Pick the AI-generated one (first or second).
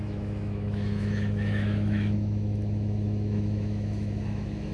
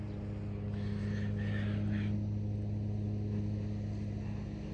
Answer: first